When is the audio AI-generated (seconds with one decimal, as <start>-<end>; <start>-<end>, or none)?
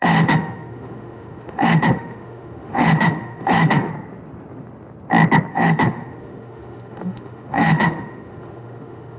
0.0-3.9; 5.5-9.2